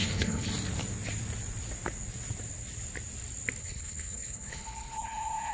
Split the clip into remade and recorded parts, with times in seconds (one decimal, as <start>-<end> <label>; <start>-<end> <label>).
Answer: 0.0-0.5 remade; 0.5-3.6 recorded; 3.6-5.5 remade